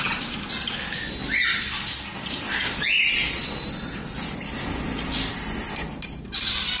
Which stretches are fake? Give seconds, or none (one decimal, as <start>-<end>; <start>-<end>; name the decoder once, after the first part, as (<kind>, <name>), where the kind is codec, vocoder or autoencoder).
none